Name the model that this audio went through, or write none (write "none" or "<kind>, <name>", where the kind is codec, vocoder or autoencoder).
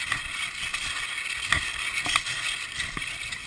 none